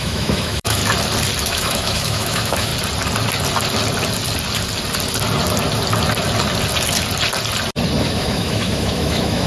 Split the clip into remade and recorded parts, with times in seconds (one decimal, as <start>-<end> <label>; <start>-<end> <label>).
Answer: 0.0-0.8 remade; 0.8-1.4 recorded; 1.4-2.7 remade; 2.7-8.0 recorded; 8.0-9.5 remade